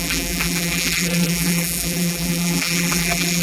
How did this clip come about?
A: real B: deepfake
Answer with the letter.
B